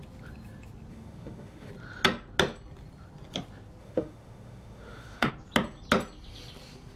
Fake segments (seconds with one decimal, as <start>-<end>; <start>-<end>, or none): 0.9-1.7; 3.8-5.3